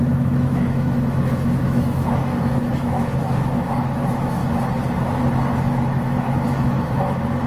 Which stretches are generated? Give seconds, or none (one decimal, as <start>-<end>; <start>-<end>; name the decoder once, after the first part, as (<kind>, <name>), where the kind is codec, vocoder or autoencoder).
0.0-4.4 (autoencoder, DAC-VAE); 5.7-7.5